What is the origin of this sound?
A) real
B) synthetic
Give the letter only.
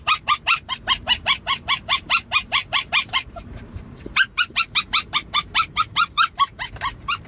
B